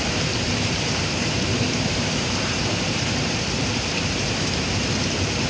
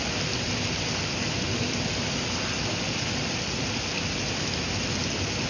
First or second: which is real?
second